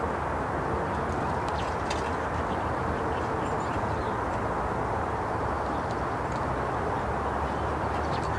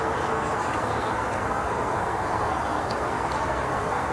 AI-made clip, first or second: second